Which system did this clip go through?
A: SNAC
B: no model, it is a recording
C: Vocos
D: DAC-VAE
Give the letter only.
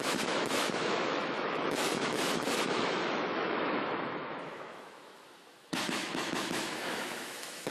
D